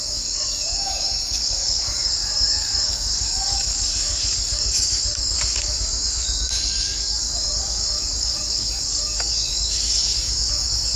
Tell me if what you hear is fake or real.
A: fake